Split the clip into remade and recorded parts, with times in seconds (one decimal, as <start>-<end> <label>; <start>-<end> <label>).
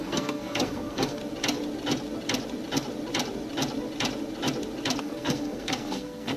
0.0-1.2 remade; 1.2-5.0 recorded; 5.0-6.4 remade